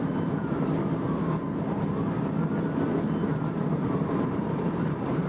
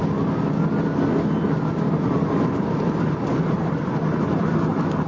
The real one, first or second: second